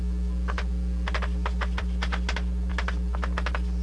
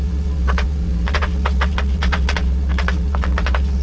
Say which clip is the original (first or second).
first